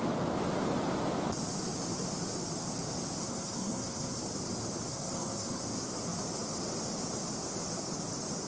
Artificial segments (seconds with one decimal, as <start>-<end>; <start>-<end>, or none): 3.2-4.2; 4.9-5.6